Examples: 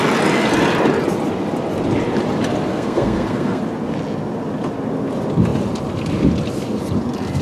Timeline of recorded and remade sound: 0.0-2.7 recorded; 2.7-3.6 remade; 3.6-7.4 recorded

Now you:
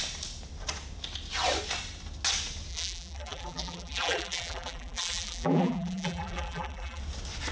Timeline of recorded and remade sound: 0.0-2.7 recorded; 2.7-7.0 remade; 7.0-7.5 recorded

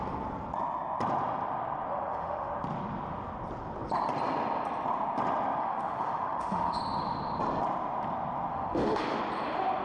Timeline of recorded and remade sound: 0.0-1.9 recorded; 1.9-2.5 remade; 2.5-5.6 recorded; 5.6-6.8 remade; 6.8-8.5 recorded; 8.5-9.2 remade; 9.2-9.8 recorded

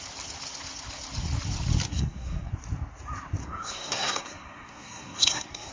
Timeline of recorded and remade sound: 0.0-1.9 recorded; 1.9-2.5 remade; 2.5-3.4 recorded; 3.4-5.7 remade

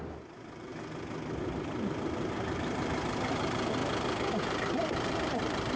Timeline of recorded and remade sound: 0.0-0.7 remade; 0.7-1.4 recorded; 1.4-3.8 remade; 3.8-4.4 recorded; 4.4-5.8 remade

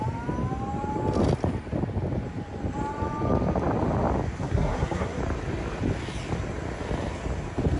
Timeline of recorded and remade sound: 0.0-4.4 recorded; 4.4-5.2 remade; 5.2-7.8 recorded

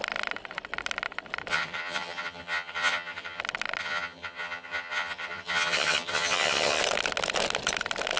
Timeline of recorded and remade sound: 0.0-1.5 recorded; 1.5-3.4 remade; 3.4-3.8 recorded; 3.8-6.8 remade; 6.8-8.2 recorded